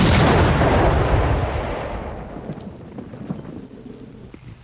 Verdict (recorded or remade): recorded